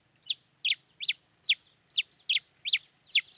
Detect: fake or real real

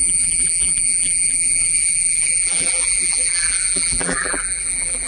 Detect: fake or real fake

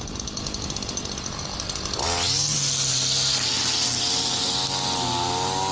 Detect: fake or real real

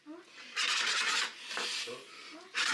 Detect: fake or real real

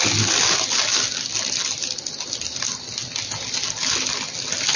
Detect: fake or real real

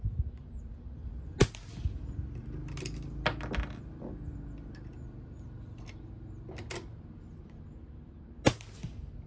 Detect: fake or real real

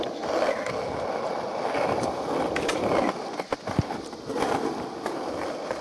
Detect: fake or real real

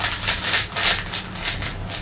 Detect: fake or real real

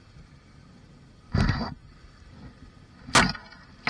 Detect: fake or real real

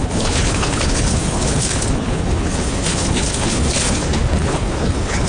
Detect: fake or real fake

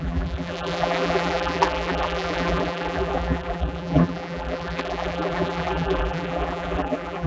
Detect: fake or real fake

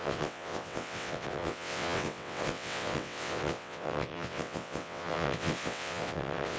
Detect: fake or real fake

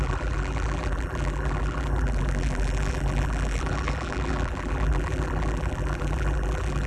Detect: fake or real fake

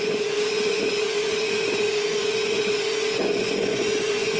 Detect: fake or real fake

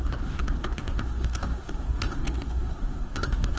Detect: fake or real fake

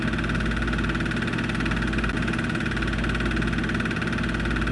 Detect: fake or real real